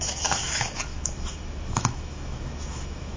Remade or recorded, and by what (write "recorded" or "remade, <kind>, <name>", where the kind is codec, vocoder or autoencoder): remade, autoencoder, DAC-VAE